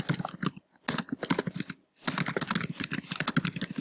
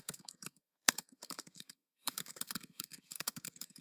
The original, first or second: first